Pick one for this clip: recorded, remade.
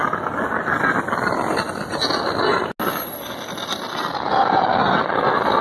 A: recorded